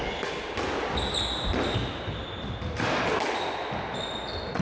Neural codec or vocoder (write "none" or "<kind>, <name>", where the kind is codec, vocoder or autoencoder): none